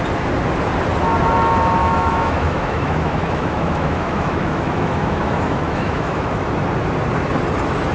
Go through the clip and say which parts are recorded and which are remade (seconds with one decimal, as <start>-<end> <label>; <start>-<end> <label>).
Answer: 0.0-1.8 recorded; 1.8-6.5 remade; 6.5-7.9 recorded